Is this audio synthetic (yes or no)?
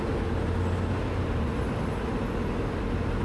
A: no